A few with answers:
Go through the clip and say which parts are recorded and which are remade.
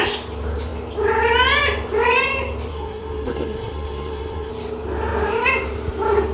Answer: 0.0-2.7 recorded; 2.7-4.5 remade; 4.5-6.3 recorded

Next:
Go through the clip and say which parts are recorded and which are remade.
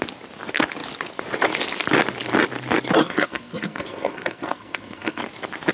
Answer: 0.0-3.0 recorded; 3.0-5.2 remade; 5.2-5.7 recorded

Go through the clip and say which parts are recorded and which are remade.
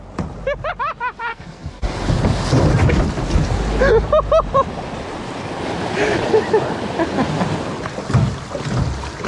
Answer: 0.0-1.3 recorded; 1.3-2.0 remade; 2.0-9.3 recorded